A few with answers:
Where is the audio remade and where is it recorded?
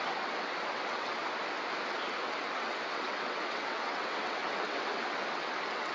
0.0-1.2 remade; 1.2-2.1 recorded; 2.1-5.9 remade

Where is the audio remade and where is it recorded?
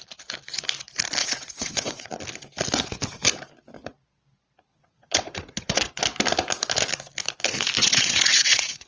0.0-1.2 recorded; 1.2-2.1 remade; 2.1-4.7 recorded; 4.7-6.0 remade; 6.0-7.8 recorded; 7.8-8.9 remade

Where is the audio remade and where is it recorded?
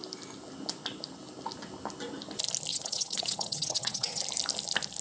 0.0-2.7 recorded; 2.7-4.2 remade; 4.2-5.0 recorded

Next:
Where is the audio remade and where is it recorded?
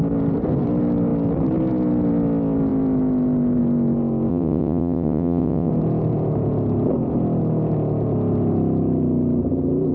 0.0-4.3 recorded; 4.3-5.7 remade; 5.7-9.9 recorded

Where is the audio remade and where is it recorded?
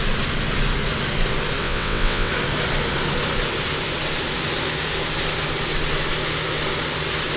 0.0-1.6 recorded; 1.6-2.3 remade; 2.3-7.4 recorded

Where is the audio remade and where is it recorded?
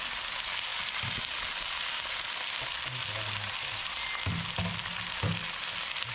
0.0-6.1 recorded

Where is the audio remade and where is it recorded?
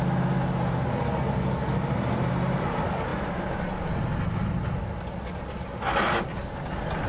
0.0-7.1 recorded